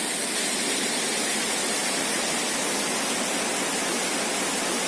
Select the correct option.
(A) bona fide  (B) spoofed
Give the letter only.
A